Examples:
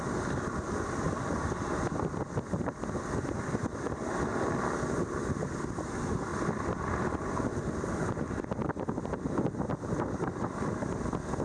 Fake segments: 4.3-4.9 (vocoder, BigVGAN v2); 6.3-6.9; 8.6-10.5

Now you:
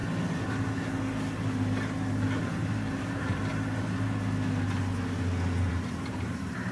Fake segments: 2.1-3.5 (vocoder, BigVGAN v2); 5.7-6.7

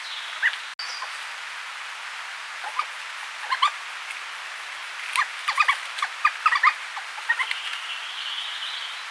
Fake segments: 6.9-8.5 (vocoder, BigVGAN v2)

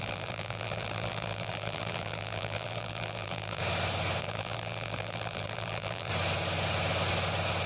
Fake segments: 0.0-3.6 (vocoder, BigVGAN v2); 4.2-6.1

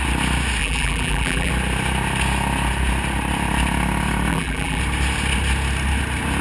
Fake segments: 0.6-1.5 (vocoder, BigVGAN v2); 4.3-4.8

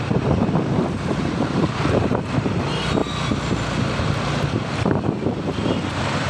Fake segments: 0.0-3.0 (vocoder, BigVGAN v2); 3.8-6.3

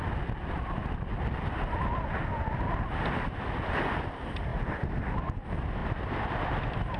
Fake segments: 5.8-6.4 (vocoder, BigVGAN v2)

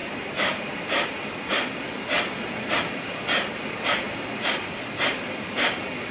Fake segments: none